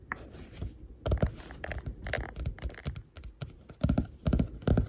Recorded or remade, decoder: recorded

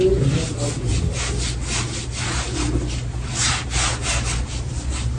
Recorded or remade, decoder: recorded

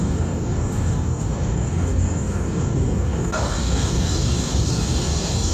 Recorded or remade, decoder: remade, codec, DAC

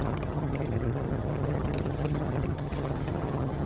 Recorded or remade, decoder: remade, vocoder, HiFi-GAN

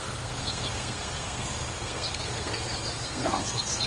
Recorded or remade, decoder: remade, codec, SNAC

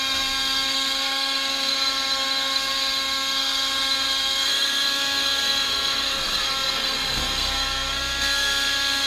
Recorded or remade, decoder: remade, codec, SNAC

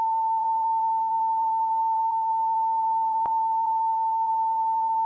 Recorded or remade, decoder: remade, vocoder, BigVGAN v2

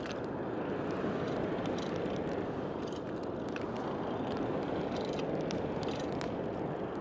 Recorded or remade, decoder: recorded